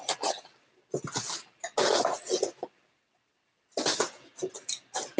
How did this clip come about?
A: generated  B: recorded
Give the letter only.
B